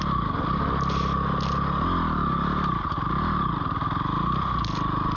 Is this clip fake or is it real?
real